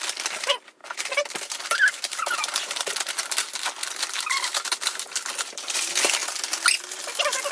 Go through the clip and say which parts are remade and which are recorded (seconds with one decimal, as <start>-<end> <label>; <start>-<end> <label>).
0.0-7.5 recorded